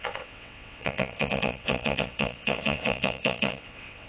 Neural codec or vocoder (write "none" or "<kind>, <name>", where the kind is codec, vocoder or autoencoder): vocoder, WaveNeXt